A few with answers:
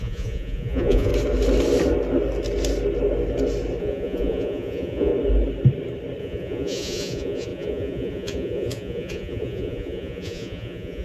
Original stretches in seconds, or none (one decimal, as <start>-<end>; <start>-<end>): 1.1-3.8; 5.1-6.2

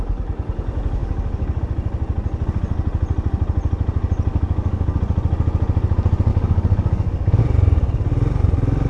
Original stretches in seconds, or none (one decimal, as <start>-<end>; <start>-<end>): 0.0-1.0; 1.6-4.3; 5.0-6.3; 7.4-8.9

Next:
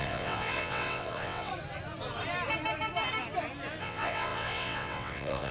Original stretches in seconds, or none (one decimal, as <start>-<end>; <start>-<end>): 1.5-3.8